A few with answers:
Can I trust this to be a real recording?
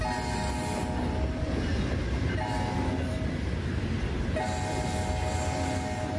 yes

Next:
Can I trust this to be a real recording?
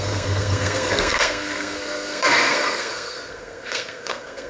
no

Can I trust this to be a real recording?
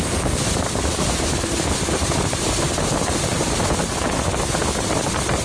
yes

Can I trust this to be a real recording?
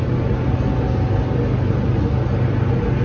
yes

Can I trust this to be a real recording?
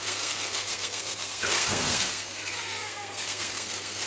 no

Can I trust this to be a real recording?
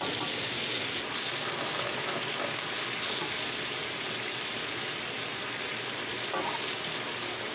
yes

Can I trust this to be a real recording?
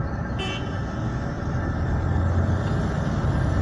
yes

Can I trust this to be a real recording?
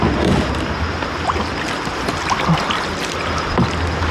yes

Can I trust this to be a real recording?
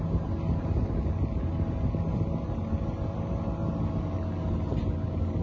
yes